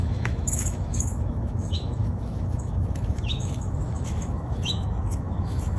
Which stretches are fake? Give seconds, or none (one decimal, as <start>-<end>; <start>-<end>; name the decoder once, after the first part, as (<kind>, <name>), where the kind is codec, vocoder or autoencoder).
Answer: 0.0-5.8 (autoencoder, DAC-VAE)